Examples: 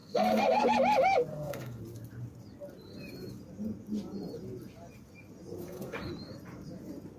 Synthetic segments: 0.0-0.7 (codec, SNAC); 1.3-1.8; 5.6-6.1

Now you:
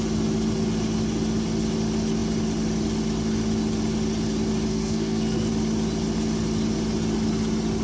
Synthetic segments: 4.7-5.5 (codec, SNAC)

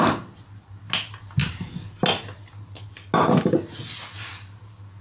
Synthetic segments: none

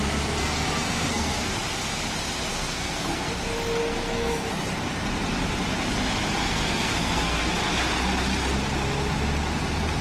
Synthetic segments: 0.4-1.5 (codec, SNAC); 2.5-3.3; 3.8-4.5; 6.4-7.5

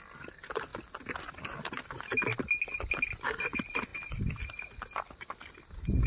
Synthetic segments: none

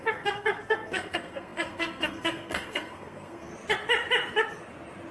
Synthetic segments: 0.0-3.5 (codec, SNAC)

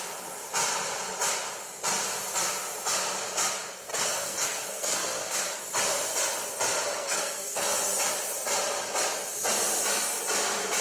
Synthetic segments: 3.9-5.6 (codec, SNAC); 6.9-7.7

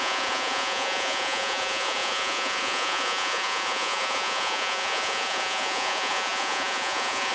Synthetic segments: 0.0-7.3 (vocoder, Vocos)